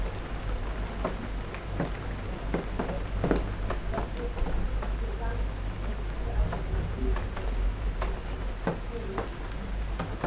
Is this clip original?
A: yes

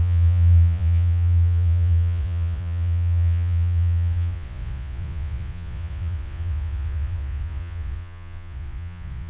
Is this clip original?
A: no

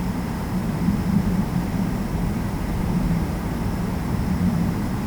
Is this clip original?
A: yes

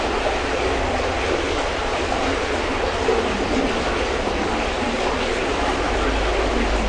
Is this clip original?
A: yes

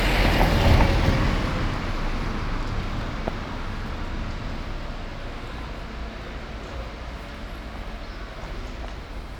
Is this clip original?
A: yes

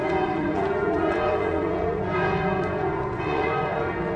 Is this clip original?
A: no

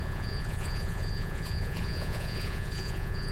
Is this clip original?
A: no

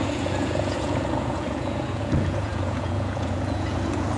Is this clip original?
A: no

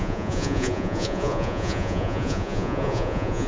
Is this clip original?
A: no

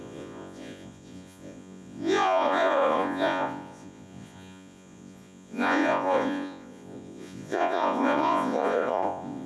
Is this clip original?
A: no